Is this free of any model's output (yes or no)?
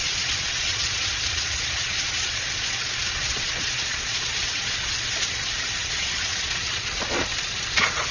no